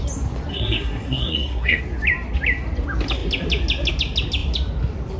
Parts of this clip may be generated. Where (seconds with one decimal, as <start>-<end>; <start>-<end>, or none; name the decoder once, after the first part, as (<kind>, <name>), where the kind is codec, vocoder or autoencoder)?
0.5-1.8 (codec, SNAC)